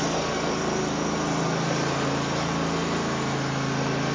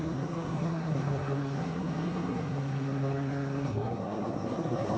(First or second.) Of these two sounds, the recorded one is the first